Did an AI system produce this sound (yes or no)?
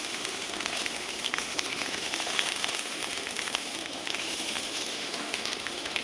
yes